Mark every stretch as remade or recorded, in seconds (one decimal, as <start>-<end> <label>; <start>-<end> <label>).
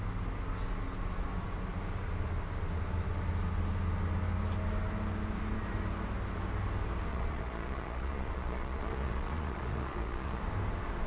0.0-7.1 recorded; 7.1-10.4 remade; 10.4-11.1 recorded